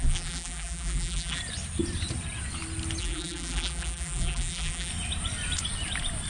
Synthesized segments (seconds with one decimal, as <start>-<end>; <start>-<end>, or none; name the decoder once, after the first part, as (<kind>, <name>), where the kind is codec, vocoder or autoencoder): 0.0-1.4 (vocoder, BigVGAN v2); 3.0-4.9